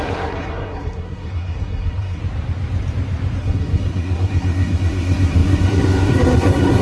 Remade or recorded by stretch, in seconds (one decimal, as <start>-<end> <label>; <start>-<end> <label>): 0.0-2.2 remade; 2.2-3.4 recorded; 3.4-6.8 remade